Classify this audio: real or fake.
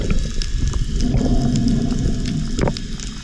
real